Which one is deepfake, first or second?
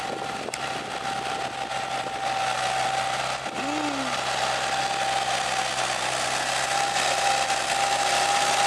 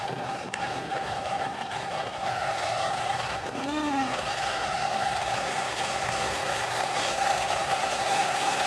second